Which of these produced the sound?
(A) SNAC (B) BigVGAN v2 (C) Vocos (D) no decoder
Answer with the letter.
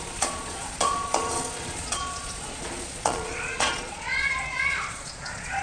C